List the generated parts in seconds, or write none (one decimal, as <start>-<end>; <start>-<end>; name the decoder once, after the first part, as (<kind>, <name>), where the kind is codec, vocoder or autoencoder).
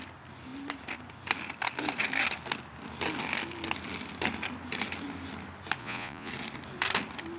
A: 5.8-6.3 (vocoder, Vocos)